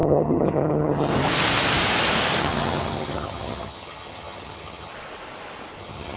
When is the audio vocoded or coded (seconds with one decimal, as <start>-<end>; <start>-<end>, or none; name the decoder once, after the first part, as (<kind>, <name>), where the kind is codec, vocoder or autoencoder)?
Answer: 0.0-1.1 (vocoder, HiFi-GAN); 2.4-4.9; 5.8-6.2